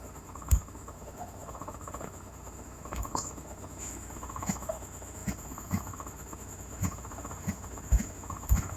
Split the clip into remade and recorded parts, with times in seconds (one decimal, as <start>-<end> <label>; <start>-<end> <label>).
0.0-8.8 remade